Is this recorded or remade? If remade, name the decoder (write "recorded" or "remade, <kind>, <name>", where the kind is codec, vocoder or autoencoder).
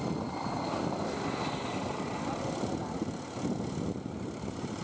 recorded